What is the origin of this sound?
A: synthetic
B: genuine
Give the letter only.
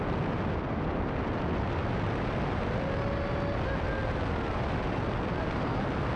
B